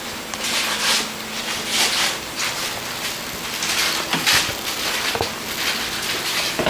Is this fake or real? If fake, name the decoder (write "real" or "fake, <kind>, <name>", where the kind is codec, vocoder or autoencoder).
real